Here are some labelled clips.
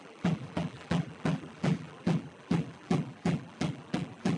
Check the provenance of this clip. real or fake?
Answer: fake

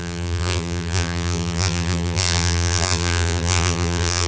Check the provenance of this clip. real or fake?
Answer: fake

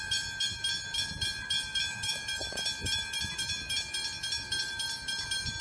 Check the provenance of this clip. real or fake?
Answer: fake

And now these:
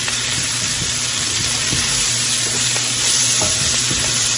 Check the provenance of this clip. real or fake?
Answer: fake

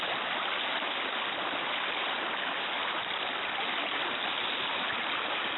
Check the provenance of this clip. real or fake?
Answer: real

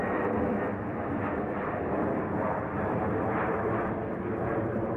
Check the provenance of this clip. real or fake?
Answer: fake